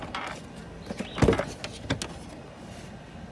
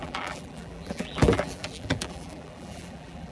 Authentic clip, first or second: first